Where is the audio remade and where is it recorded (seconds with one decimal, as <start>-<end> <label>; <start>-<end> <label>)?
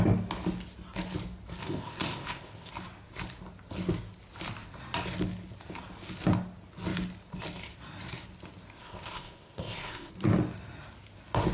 0.0-1.6 recorded; 1.6-2.7 remade; 2.7-8.8 recorded; 8.8-10.1 remade; 10.1-11.5 recorded